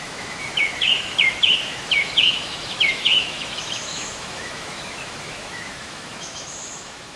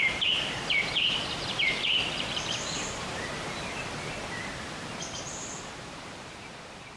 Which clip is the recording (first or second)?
second